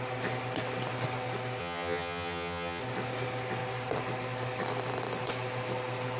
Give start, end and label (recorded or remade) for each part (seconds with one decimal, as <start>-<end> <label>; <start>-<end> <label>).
0.0-1.6 recorded; 1.6-2.8 remade; 2.8-6.2 recorded